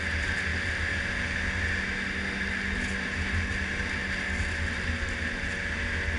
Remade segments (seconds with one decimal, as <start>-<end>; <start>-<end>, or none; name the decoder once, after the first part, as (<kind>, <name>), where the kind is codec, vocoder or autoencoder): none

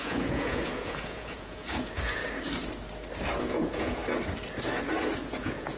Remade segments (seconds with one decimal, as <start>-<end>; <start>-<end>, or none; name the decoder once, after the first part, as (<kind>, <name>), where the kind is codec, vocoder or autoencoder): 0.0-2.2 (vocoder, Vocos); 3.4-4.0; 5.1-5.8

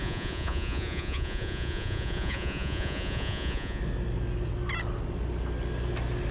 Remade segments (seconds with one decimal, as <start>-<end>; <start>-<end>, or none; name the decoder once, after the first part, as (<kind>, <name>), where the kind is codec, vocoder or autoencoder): 0.0-3.8 (vocoder, Vocos)